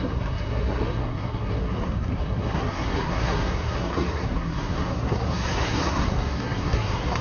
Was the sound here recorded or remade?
remade